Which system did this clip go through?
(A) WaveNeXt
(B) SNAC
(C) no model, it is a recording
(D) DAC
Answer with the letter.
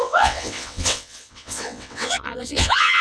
A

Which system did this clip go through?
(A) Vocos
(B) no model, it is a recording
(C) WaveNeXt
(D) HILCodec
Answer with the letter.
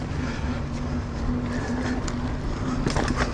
B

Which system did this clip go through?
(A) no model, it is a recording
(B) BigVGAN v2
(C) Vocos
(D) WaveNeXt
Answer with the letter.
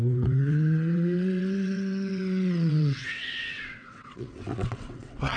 D